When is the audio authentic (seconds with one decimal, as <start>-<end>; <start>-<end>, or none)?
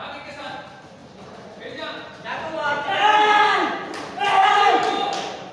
0.0-5.5